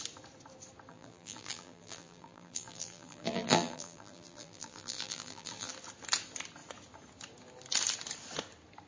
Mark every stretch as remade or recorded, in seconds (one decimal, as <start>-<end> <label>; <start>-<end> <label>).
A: 0.0-0.9 recorded; 0.9-5.7 remade; 5.7-8.9 recorded